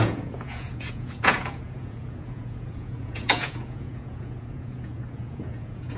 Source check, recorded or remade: remade